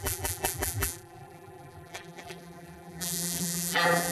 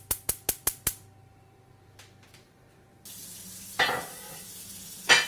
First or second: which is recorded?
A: second